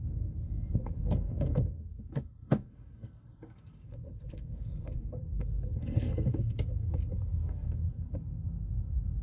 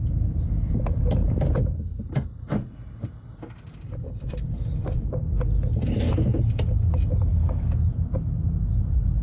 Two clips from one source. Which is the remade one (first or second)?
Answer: first